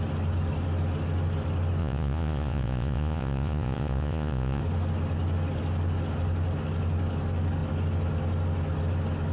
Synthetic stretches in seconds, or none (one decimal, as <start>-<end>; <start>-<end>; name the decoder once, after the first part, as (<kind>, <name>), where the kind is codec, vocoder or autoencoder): 1.8-4.6 (vocoder, Vocos)